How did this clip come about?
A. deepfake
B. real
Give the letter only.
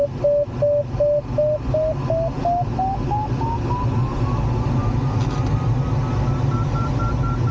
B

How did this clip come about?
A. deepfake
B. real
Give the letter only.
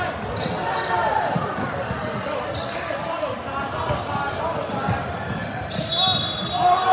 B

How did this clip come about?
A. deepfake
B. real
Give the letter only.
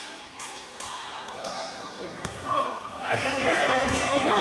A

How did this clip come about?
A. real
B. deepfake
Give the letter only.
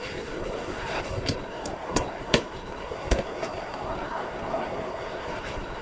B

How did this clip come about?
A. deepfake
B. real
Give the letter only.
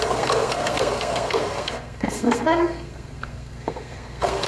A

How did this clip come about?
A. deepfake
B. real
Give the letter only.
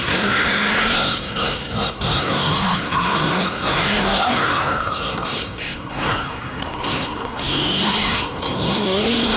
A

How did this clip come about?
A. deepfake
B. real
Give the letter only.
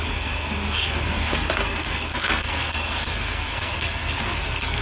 A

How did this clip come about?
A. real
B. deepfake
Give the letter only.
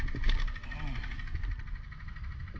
A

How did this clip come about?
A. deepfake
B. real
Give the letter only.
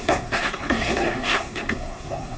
A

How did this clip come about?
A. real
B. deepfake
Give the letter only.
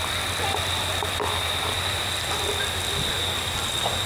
A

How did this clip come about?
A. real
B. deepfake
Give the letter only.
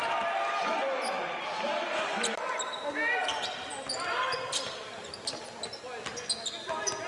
A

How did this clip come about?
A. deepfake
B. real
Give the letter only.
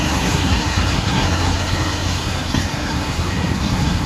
A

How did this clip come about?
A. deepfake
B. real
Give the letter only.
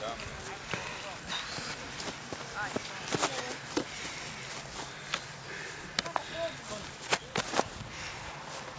B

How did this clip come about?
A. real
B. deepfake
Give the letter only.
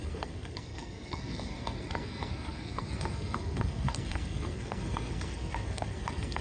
B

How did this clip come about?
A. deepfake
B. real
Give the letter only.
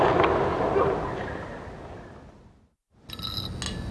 B